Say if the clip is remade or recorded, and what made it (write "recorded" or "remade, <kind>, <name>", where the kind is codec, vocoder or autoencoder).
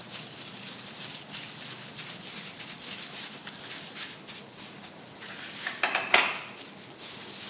recorded